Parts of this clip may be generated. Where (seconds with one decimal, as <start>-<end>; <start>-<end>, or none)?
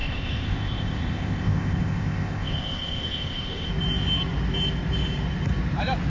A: 0.0-3.7